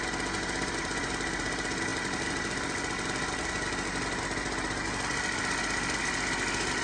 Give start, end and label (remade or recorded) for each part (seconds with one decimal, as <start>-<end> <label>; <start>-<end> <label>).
0.0-6.8 recorded